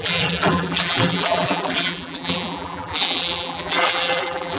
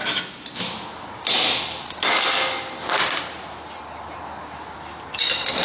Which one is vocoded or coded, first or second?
first